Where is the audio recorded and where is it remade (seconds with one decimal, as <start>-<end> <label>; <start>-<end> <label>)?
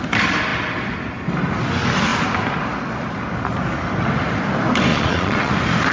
0.0-4.9 recorded; 4.9-5.5 remade; 5.5-5.9 recorded